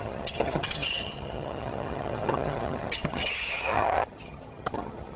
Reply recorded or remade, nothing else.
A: remade